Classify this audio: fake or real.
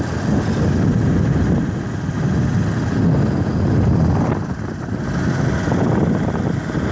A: real